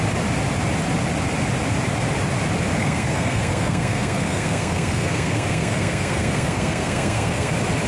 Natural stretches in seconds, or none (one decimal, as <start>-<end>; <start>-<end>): 0.0-2.8; 7.5-7.9